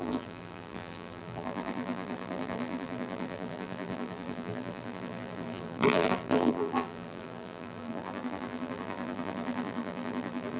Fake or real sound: fake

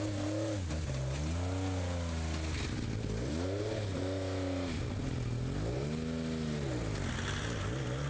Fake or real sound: real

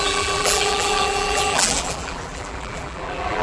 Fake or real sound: fake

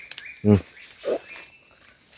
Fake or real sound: real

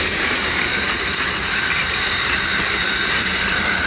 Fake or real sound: fake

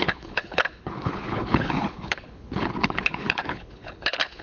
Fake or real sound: fake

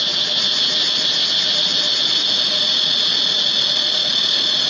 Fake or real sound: real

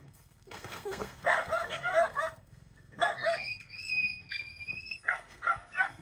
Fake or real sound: fake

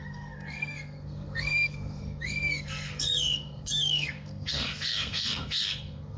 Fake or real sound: fake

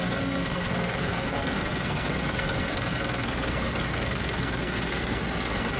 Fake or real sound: fake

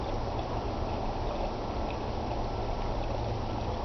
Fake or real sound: real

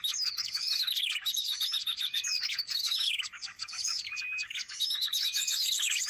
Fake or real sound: fake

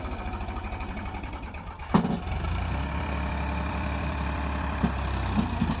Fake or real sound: fake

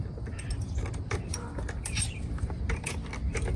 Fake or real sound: fake